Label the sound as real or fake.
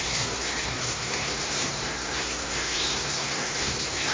fake